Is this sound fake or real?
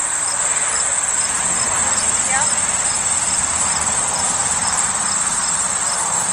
real